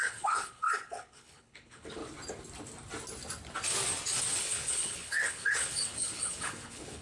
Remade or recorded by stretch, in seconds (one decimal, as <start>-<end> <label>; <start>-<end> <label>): 0.0-2.0 remade; 2.0-4.3 recorded; 4.3-7.0 remade